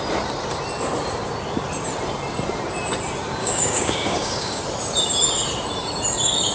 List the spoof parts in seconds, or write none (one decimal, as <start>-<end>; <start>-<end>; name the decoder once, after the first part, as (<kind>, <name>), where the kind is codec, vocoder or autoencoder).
3.4-4.6 (codec, DAC)